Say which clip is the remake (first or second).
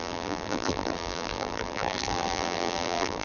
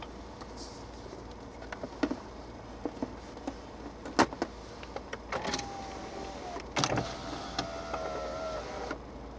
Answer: first